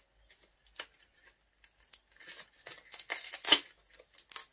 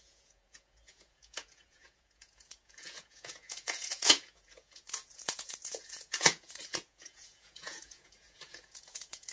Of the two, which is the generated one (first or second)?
second